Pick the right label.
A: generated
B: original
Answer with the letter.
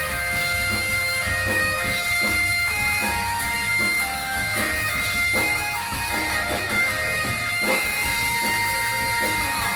A